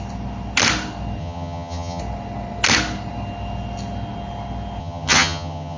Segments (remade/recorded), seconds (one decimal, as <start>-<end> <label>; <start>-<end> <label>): 0.0-1.2 recorded; 1.2-2.0 remade; 2.0-4.8 recorded; 4.8-5.8 remade